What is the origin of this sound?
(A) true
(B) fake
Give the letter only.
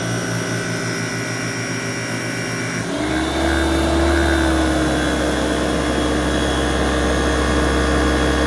A